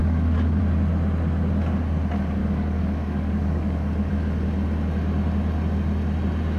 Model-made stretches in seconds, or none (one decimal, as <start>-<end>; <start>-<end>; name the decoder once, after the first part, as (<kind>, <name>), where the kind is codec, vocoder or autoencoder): 0.0-0.6 (codec, DAC); 2.4-4.1